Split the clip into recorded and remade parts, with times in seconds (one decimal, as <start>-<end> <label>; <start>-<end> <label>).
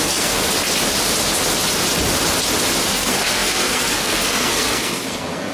0.0-0.4 remade; 0.4-2.8 recorded; 2.8-5.5 remade